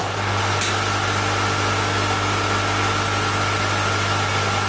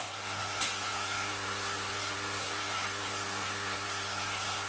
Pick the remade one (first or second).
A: second